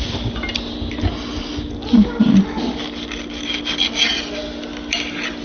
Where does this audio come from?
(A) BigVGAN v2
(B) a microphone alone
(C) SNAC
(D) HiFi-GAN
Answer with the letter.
B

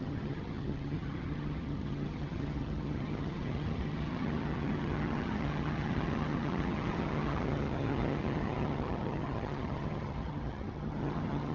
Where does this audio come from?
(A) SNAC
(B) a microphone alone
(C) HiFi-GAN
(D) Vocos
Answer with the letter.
C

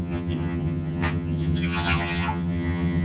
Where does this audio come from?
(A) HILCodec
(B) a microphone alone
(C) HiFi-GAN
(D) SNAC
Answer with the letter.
C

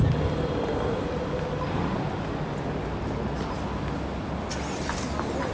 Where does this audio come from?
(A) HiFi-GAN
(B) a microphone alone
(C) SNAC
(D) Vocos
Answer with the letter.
B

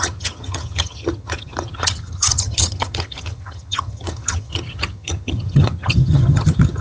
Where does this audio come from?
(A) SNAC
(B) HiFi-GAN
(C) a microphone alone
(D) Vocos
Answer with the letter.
B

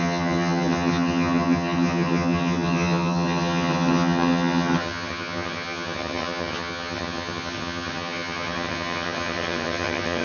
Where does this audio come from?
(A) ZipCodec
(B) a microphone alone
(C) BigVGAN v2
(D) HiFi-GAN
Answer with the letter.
D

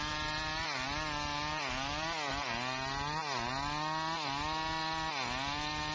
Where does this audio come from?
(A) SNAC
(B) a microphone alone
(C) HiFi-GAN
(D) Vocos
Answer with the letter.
B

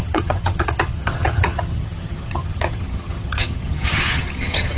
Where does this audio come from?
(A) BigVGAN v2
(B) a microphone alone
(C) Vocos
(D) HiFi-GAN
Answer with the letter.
D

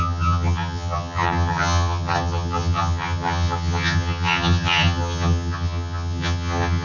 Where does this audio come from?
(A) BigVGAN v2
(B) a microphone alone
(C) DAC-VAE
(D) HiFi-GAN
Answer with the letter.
D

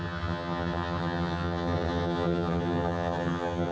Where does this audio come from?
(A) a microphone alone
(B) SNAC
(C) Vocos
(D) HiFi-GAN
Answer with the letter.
D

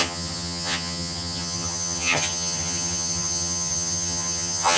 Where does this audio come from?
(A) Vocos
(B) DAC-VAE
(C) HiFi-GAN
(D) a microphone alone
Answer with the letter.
C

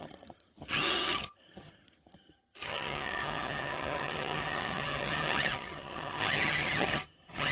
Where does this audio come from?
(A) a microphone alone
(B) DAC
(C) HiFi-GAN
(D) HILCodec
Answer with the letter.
C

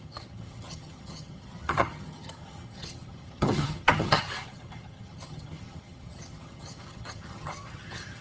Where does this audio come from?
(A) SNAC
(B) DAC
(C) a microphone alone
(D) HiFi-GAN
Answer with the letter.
D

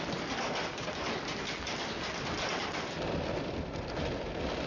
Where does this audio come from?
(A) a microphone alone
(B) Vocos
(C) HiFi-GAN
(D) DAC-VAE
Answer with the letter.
A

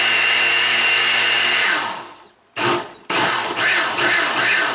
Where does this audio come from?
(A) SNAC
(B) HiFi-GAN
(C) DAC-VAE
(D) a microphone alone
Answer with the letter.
D